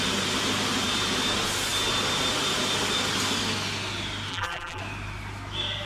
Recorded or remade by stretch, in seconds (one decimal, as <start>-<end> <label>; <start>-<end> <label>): 0.0-4.3 recorded; 4.3-4.8 remade; 4.8-5.9 recorded